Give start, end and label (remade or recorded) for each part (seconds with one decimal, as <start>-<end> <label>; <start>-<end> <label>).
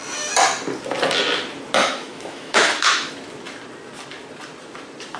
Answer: 0.0-1.8 recorded; 1.8-3.1 remade; 3.1-5.2 recorded